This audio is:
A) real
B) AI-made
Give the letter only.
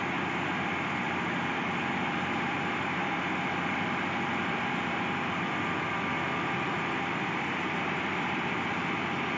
A